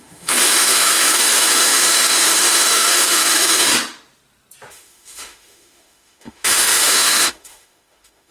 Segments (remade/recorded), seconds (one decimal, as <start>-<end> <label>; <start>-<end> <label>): 0.0-3.7 remade; 3.7-4.7 recorded; 4.7-8.3 remade